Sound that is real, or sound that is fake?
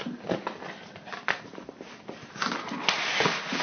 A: real